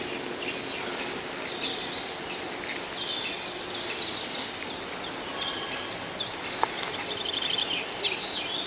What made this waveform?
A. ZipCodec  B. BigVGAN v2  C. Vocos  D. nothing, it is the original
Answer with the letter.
D